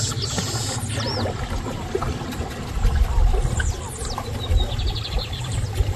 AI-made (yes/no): no